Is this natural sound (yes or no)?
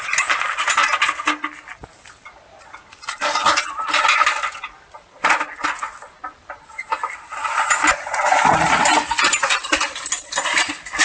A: yes